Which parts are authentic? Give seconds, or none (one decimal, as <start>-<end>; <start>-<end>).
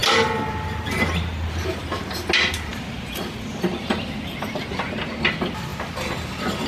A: 0.0-6.7